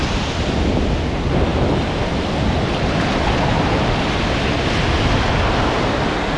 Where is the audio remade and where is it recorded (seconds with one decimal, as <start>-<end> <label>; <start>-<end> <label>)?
0.0-1.5 recorded; 1.5-5.3 remade; 5.3-6.4 recorded